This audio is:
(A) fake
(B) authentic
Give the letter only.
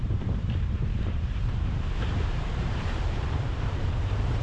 A